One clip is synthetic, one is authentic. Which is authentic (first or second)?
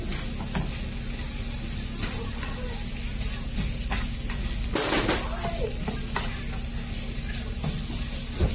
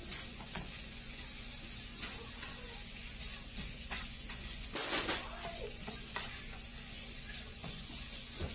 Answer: first